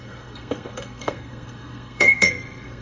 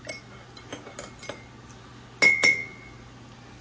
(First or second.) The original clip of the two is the second